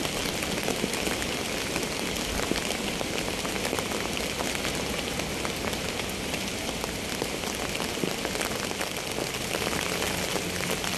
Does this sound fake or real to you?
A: real